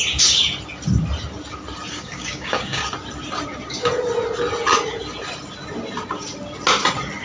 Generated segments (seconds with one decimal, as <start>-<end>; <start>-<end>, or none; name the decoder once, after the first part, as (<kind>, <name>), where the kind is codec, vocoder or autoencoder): 0.0-0.4 (codec, DAC); 1.9-2.8